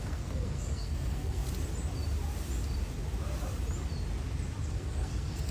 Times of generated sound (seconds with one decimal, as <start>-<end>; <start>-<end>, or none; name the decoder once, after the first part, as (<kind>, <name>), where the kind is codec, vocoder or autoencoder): 0.0-1.4 (codec, SNAC); 4.7-5.5

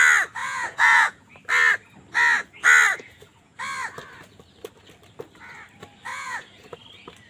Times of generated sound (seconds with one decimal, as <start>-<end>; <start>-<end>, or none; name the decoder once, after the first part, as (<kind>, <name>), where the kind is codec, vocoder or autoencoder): 0.4-1.3 (vocoder, Vocos); 2.9-3.6; 6.1-6.8

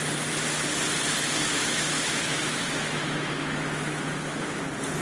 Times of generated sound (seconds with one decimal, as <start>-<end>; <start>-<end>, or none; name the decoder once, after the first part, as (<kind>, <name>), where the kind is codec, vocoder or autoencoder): 1.6-4.6 (autoencoder, DAC-VAE)